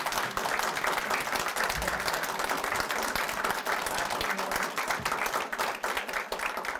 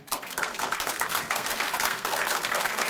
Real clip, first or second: first